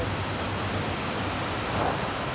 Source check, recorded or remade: recorded